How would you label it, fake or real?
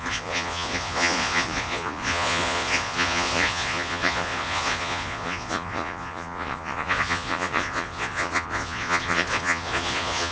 fake